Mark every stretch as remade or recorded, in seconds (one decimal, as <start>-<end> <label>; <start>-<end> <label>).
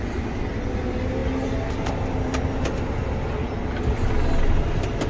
0.0-5.1 recorded